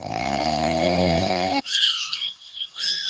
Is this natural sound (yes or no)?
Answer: no